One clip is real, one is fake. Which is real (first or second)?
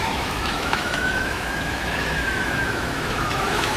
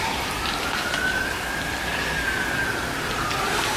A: second